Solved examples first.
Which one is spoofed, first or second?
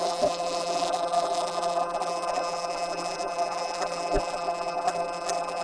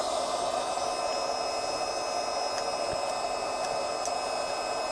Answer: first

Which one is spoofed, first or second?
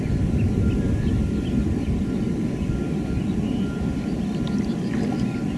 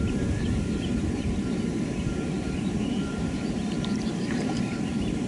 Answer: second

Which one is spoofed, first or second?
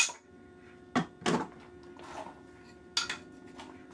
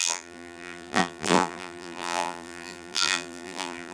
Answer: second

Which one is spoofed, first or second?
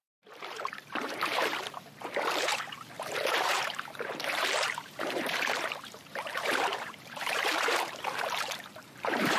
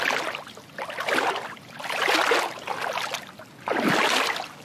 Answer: first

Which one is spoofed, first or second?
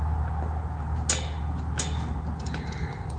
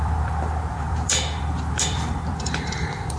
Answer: second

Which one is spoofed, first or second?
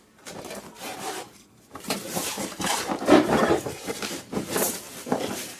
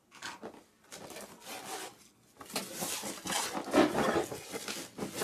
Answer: first